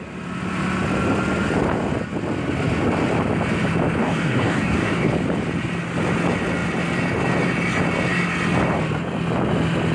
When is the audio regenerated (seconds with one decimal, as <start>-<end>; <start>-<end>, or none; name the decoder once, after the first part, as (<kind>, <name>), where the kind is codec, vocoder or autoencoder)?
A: 4.0-5.1 (codec, DAC)